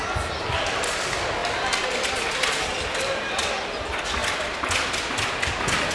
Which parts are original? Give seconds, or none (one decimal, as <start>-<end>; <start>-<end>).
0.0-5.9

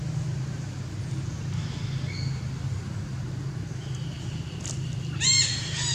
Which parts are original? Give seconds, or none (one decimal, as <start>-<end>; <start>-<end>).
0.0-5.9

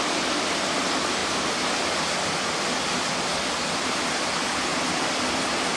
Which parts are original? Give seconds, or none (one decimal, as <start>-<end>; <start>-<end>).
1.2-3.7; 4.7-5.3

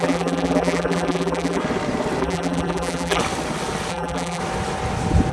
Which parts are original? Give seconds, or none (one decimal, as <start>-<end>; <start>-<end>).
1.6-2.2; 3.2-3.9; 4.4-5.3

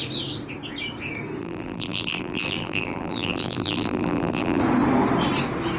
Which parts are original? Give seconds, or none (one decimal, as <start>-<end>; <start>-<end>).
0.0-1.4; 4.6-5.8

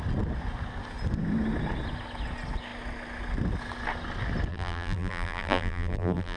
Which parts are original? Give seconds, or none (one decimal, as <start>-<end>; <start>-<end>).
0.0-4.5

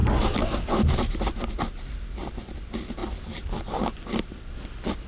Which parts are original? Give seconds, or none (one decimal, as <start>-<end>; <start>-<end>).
1.1-3.0; 3.8-5.1